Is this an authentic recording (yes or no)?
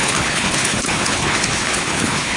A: no